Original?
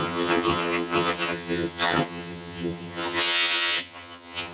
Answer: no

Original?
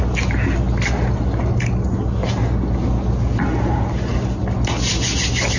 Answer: yes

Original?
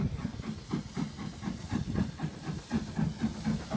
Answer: yes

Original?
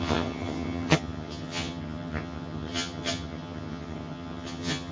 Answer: no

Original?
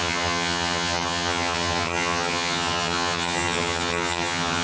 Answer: no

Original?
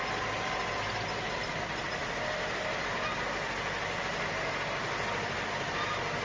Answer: yes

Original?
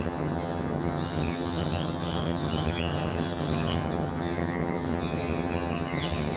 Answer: no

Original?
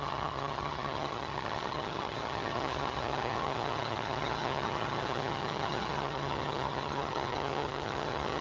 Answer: no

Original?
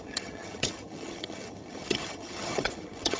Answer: no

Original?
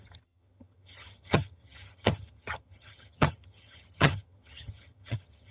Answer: no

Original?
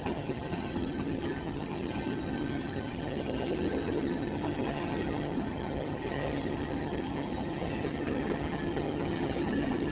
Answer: no